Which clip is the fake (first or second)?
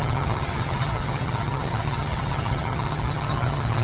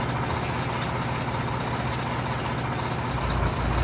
first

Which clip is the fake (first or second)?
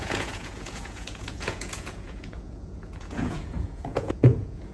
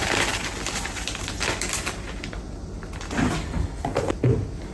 first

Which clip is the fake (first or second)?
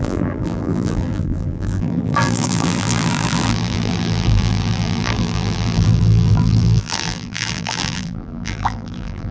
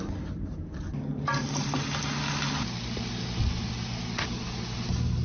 first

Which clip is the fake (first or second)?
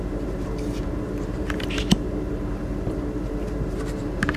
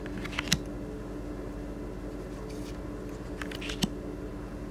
first